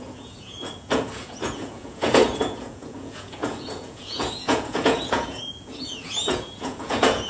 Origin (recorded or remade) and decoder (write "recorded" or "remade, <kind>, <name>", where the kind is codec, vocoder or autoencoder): remade, vocoder, Vocos